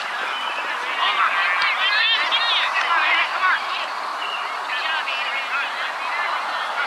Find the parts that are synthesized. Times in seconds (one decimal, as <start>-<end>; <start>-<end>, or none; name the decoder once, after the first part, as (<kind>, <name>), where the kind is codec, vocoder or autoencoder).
none